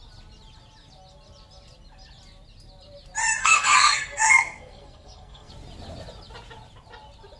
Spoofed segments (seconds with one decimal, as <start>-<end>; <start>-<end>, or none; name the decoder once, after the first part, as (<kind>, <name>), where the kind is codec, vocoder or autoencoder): 3.4-5.5 (codec, SNAC)